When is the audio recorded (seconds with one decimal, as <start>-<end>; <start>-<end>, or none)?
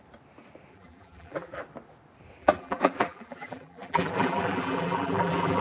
0.0-0.7; 1.6-2.4